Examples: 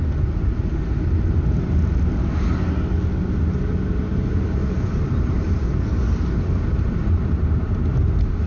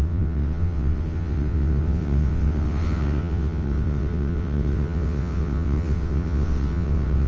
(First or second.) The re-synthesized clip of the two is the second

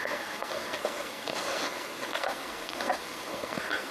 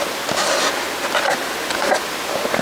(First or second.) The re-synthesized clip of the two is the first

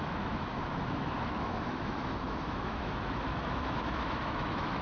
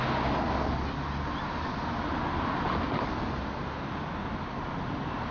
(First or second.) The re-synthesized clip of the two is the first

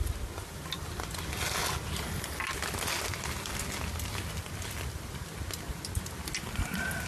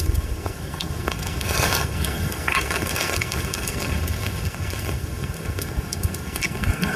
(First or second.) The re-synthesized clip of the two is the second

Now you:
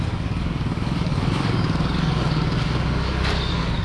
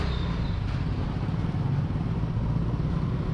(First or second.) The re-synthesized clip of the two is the first